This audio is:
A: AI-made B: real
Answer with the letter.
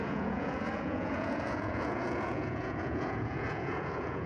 A